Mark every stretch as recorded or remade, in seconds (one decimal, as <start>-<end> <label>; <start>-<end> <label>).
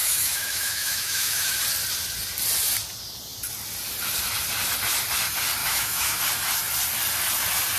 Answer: 0.0-1.6 remade; 1.6-5.6 recorded; 5.6-6.2 remade; 6.2-7.8 recorded